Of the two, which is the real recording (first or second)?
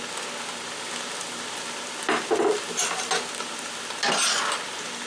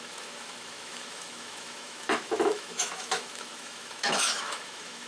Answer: first